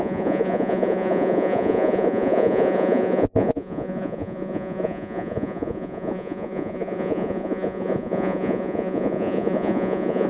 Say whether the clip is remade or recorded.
remade